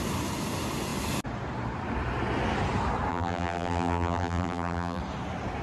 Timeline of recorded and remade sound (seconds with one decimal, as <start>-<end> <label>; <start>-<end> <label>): 0.0-3.1 recorded; 3.1-5.0 remade; 5.0-5.6 recorded